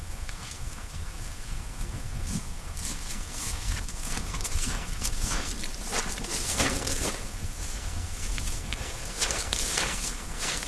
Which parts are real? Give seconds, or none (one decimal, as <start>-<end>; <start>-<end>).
5.5-6.2